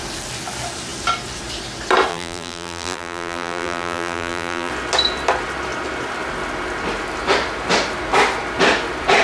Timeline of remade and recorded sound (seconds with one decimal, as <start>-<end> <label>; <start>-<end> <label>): 0.0-2.1 recorded; 2.1-4.7 remade; 4.7-9.2 recorded